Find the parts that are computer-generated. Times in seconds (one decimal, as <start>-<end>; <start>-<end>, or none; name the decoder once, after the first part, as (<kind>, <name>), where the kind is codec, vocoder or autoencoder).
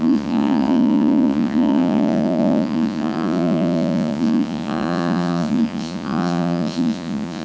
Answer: 0.0-7.4 (vocoder, Vocos)